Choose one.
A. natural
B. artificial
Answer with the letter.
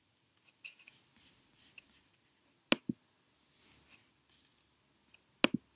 A